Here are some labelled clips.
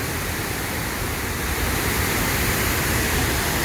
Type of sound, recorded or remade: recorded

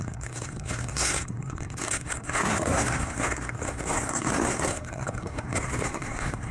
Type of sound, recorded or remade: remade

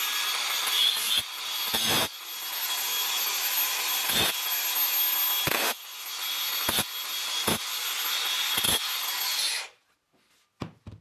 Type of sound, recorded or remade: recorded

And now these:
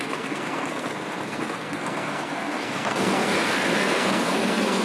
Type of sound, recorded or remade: remade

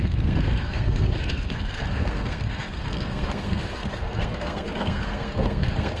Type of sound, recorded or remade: remade